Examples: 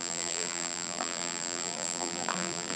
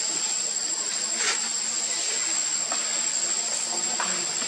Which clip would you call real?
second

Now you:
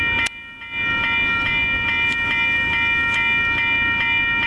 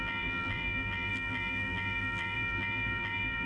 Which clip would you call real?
first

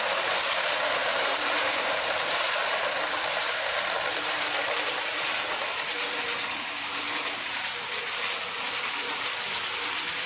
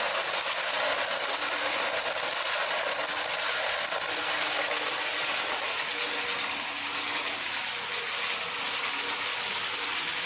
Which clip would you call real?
second